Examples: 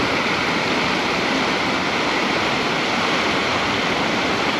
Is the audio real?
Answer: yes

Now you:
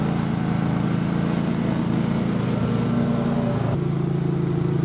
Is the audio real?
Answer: yes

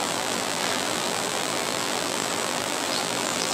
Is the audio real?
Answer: no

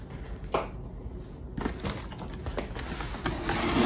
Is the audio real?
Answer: yes